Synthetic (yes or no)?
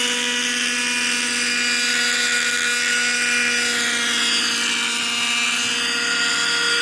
no